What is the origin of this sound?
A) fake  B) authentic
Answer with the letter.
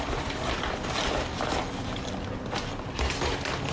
B